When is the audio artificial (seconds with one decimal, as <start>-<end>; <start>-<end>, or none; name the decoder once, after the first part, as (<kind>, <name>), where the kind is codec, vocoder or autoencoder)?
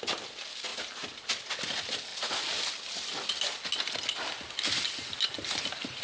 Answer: none